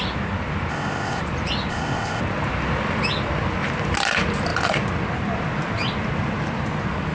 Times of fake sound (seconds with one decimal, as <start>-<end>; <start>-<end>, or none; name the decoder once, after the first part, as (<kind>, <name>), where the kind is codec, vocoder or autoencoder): 0.7-1.2 (codec, ZipCodec); 1.7-2.2